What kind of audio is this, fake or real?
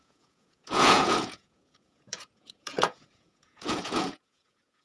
fake